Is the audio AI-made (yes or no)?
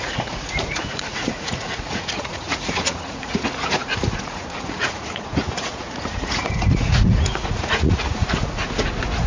yes